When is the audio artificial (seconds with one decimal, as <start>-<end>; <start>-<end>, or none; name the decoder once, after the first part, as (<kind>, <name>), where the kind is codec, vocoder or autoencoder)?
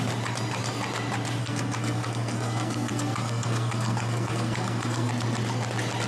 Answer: 1.4-5.1 (codec, SNAC)